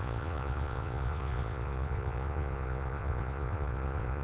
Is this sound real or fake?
fake